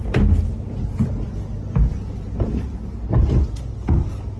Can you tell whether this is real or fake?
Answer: real